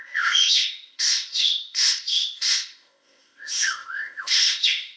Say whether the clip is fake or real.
fake